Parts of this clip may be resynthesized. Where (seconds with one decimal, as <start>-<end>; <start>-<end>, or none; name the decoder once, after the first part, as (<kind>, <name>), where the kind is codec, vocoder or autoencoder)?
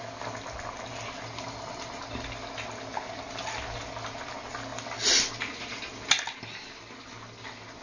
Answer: none